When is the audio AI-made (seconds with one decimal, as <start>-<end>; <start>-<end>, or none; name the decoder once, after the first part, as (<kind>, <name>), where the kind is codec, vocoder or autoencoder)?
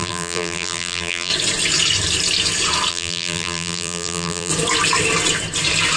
0.0-1.3 (vocoder, BigVGAN v2); 2.9-4.5